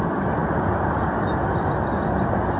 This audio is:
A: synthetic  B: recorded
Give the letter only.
B